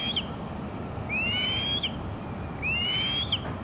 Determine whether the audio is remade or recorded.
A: recorded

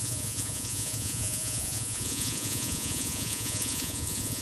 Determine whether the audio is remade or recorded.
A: remade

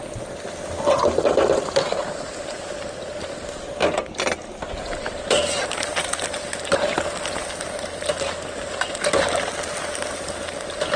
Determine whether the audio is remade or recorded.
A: recorded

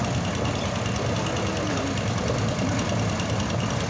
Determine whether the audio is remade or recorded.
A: recorded